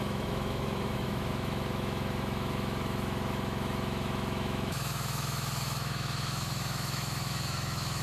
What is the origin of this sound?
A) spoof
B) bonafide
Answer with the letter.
A